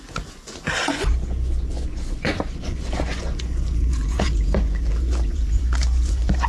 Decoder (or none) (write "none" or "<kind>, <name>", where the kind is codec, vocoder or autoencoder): vocoder, Vocos